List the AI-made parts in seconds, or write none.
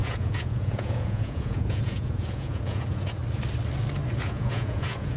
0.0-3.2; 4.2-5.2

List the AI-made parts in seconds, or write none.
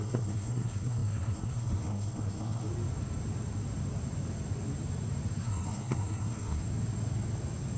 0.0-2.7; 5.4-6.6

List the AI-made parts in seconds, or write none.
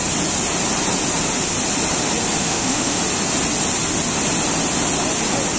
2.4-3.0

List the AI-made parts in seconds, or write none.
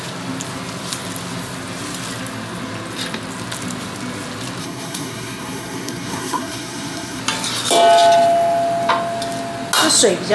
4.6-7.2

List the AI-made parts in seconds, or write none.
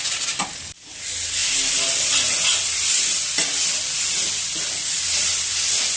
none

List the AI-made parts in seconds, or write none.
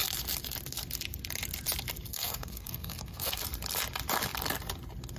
2.1-3.4